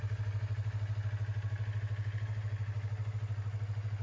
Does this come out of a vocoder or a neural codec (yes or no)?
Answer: no